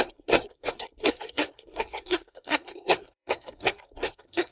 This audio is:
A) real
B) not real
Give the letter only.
B